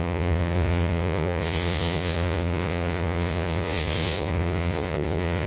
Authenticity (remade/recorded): remade